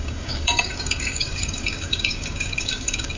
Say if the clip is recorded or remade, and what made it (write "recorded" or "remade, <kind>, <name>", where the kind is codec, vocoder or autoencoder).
remade, codec, DAC